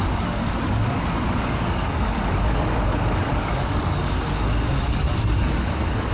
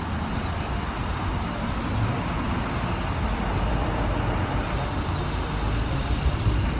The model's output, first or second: first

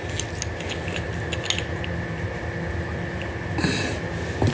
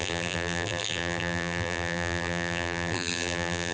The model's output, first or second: second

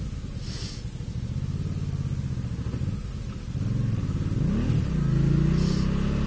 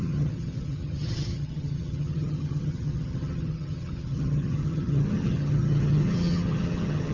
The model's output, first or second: second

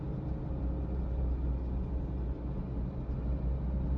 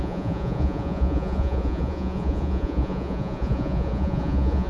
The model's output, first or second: second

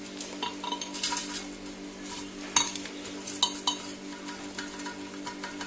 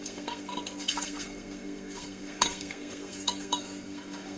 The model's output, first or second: second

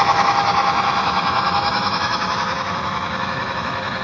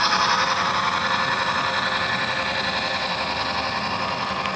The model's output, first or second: first